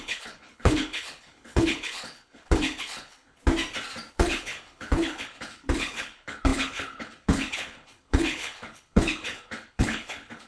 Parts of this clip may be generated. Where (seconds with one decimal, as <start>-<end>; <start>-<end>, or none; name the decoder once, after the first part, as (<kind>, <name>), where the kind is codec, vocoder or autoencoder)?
0.0-3.4 (codec, HILCodec); 4.1-10.5